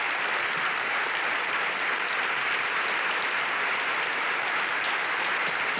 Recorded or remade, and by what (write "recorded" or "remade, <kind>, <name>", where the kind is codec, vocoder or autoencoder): recorded